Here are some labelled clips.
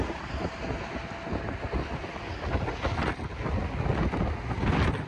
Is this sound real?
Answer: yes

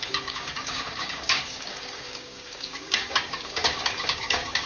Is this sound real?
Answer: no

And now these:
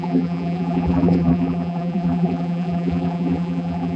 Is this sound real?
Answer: no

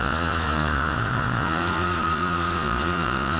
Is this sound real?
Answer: no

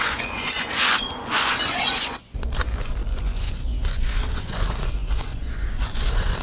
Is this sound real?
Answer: no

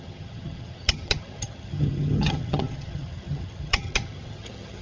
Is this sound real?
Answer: no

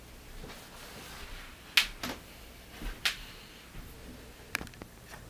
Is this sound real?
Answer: yes